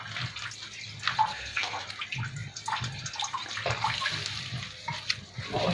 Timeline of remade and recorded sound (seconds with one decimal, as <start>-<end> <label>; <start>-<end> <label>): 0.0-1.3 recorded; 1.3-1.8 remade; 1.8-5.7 recorded